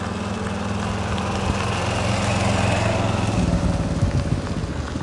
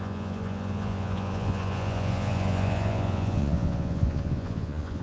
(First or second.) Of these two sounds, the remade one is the second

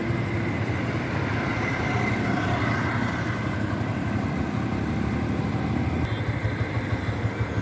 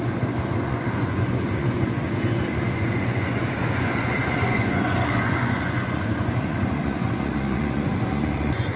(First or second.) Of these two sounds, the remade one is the second